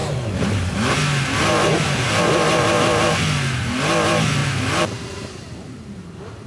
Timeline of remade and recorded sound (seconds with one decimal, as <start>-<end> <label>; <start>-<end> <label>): 0.0-0.6 remade; 0.6-1.1 recorded; 1.1-3.1 remade; 3.1-4.4 recorded; 4.4-6.5 remade